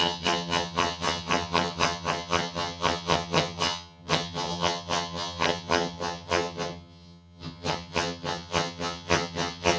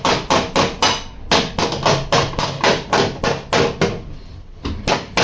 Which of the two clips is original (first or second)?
second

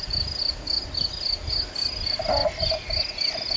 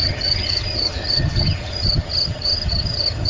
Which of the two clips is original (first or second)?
first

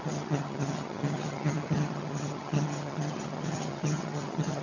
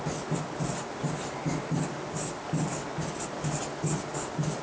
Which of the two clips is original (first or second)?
second